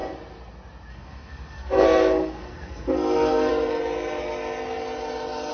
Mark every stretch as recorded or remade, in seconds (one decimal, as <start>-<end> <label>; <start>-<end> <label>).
0.0-0.9 recorded; 0.9-3.5 remade; 3.5-5.5 recorded